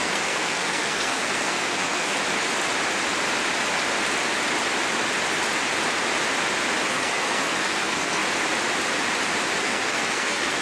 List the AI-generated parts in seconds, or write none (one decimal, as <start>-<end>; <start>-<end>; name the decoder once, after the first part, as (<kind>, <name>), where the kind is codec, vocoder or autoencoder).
0.0-2.2 (codec, SNAC); 6.9-8.2; 9.6-10.6